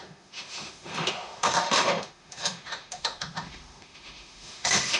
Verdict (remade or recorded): remade